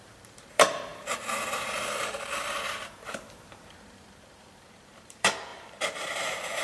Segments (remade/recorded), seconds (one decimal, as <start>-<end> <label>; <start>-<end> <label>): 0.0-6.6 remade